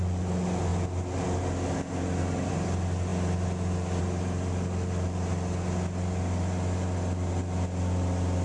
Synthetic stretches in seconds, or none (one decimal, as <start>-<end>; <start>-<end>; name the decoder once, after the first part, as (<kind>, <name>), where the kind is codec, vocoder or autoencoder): none